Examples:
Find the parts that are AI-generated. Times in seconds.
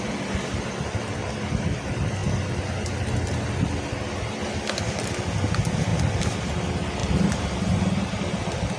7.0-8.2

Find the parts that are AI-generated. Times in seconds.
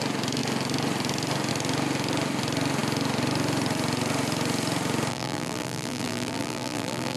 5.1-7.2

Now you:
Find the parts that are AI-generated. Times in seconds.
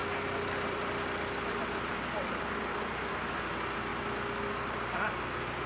0.0-3.4